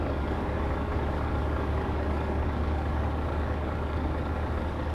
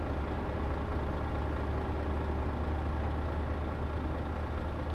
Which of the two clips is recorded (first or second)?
second